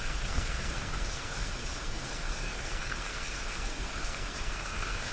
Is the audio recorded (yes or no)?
no